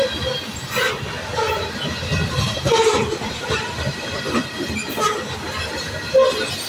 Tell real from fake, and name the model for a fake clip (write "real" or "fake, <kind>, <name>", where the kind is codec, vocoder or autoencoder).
real